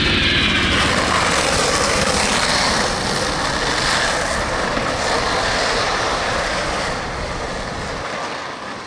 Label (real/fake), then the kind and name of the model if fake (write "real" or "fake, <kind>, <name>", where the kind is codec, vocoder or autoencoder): real